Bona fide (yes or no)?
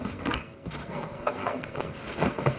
no